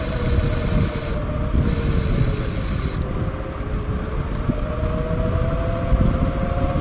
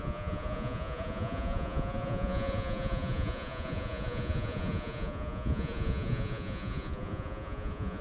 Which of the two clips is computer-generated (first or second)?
second